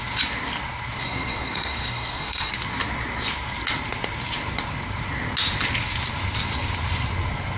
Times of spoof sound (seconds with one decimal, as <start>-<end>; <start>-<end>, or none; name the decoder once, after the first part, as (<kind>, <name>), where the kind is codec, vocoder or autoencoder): 1.0-2.5 (codec, SNAC)